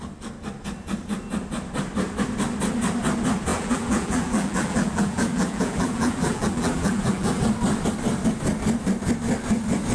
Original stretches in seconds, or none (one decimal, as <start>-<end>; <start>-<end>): 0.0-3.5; 7.4-9.9